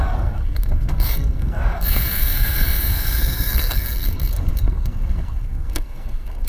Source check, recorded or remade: remade